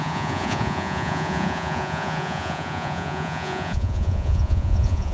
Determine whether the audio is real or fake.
fake